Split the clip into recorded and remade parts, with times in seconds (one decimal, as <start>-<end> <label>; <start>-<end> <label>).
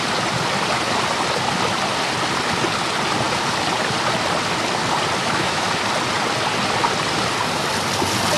0.0-5.2 recorded; 5.2-5.7 remade; 5.7-8.4 recorded